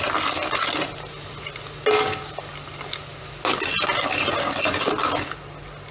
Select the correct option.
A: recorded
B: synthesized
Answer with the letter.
A